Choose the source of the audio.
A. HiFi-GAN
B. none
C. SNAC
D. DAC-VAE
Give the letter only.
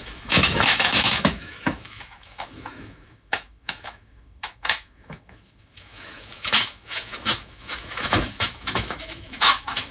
D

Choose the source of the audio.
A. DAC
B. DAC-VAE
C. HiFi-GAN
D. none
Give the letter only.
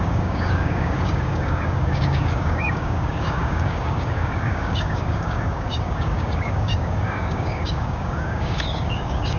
A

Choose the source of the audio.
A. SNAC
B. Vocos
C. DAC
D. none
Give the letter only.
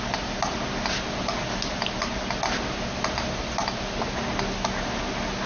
D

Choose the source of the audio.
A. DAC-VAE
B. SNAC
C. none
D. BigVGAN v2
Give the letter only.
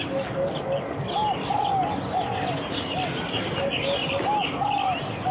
C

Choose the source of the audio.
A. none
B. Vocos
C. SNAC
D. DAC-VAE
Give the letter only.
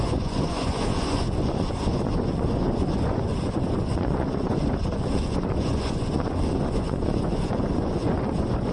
B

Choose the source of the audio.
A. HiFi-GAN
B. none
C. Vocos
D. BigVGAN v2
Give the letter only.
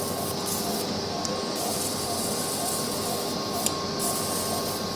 B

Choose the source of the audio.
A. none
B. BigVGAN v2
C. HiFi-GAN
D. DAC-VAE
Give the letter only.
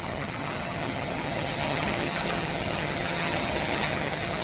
C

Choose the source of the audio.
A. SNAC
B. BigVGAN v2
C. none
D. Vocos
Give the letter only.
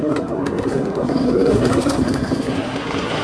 A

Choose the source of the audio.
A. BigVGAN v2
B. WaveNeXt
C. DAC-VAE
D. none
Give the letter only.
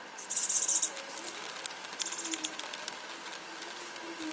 D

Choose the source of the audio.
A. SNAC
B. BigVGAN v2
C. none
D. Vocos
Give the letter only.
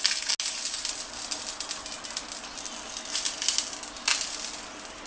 C